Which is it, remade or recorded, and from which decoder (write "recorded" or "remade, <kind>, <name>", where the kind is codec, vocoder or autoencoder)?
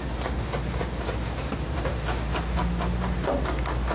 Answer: recorded